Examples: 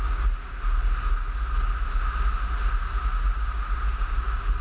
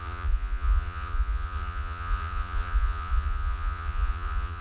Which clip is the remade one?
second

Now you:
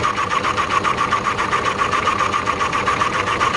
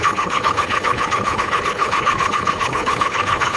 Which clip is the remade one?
second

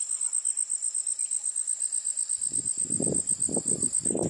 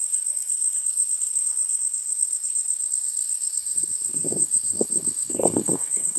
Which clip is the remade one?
second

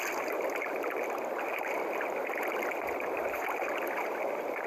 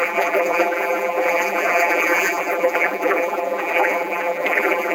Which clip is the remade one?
second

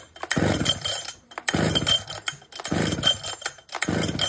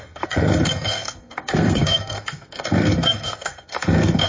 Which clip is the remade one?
second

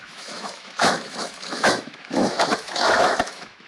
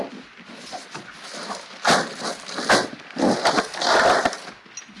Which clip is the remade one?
first